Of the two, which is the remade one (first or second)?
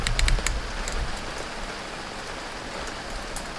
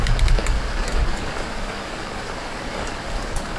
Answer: second